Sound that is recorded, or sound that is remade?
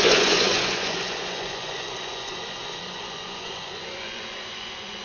remade